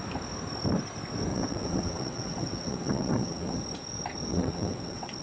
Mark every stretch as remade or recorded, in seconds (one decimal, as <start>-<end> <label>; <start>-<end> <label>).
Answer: 0.0-1.3 recorded; 1.3-3.6 remade; 3.6-4.3 recorded; 4.3-5.2 remade